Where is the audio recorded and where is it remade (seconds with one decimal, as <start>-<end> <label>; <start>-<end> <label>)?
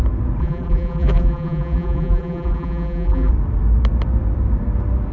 0.0-0.4 recorded; 0.4-3.3 remade; 3.3-5.1 recorded